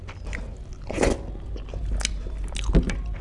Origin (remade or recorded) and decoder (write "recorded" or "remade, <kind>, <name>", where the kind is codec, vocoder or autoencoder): recorded